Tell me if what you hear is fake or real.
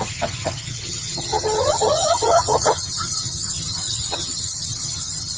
fake